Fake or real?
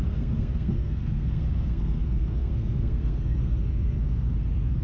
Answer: fake